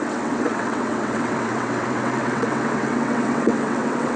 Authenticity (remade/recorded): remade